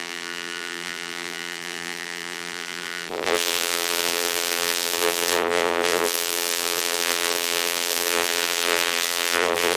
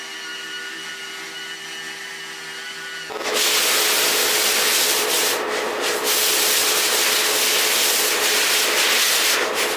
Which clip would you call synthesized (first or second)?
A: first